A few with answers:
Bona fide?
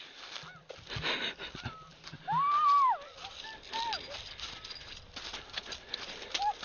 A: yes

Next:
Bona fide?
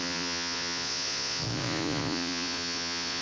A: no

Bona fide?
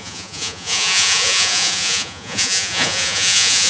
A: no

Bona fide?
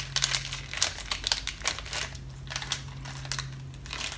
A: yes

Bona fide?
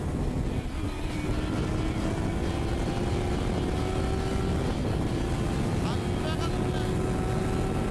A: yes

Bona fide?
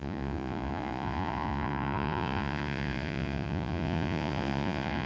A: no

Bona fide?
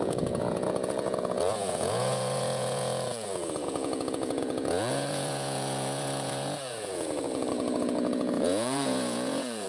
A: no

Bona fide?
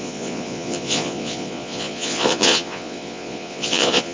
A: no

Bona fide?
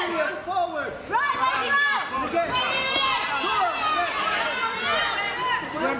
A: yes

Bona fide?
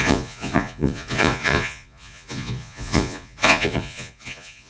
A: no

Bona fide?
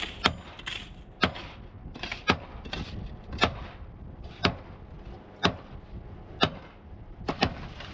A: yes